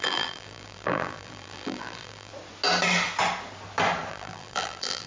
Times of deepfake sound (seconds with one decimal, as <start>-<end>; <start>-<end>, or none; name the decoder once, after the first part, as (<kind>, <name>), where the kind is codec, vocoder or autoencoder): 0.0-2.3 (vocoder, BigVGAN v2); 4.1-5.1